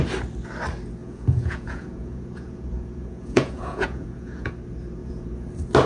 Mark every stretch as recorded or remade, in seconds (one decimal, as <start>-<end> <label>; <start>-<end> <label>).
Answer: 0.0-1.0 recorded; 1.0-4.5 remade; 4.5-5.0 recorded; 5.0-5.5 remade; 5.5-5.9 recorded